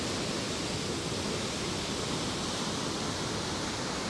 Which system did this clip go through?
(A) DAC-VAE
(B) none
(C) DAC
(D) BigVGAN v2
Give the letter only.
B